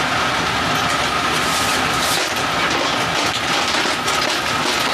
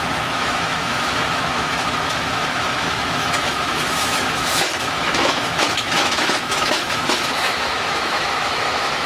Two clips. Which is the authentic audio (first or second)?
first